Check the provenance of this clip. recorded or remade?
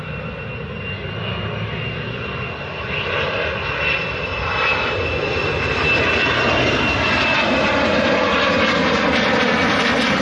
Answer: recorded